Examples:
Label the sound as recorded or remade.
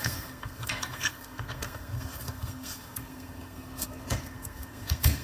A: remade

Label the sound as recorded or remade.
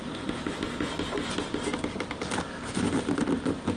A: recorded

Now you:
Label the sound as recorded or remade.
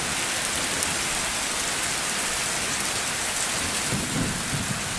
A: recorded